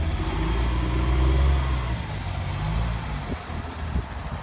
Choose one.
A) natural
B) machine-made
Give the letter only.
A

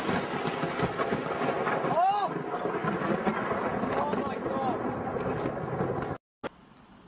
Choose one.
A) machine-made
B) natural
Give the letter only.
B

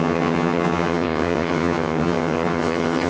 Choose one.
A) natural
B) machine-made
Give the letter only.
B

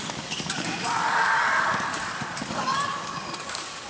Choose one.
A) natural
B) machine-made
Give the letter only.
B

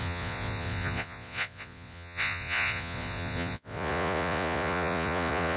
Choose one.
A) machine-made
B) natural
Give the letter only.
A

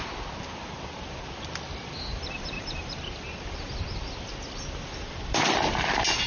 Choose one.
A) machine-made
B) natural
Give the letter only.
A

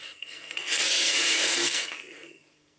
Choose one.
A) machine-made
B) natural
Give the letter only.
A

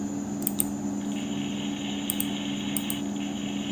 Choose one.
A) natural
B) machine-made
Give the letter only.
A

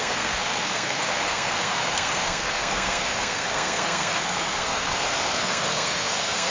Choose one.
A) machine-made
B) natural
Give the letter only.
A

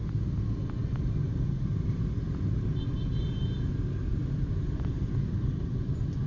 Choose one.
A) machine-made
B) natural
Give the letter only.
B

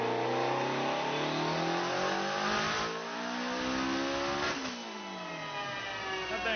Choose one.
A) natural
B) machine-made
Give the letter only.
A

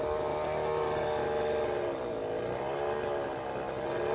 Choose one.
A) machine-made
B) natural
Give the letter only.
B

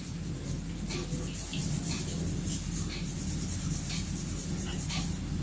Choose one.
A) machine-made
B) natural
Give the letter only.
B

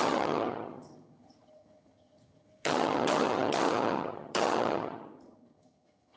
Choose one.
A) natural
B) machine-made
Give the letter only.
B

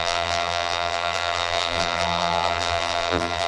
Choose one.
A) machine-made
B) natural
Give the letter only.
A